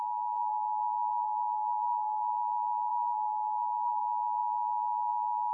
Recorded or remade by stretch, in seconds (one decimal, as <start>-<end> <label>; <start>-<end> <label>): 0.0-0.4 recorded; 0.4-2.3 remade; 2.3-2.9 recorded; 2.9-4.0 remade; 4.0-5.5 recorded